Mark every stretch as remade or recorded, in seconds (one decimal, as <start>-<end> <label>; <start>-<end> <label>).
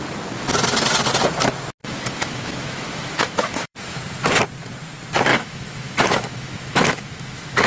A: 0.0-1.8 recorded; 1.8-4.0 remade; 4.0-5.3 recorded; 5.3-7.7 remade